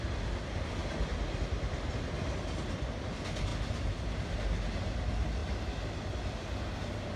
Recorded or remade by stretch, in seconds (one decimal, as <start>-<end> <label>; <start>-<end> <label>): 0.0-7.2 recorded